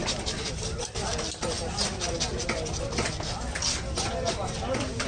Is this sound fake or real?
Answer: real